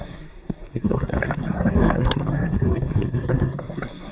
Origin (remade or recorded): remade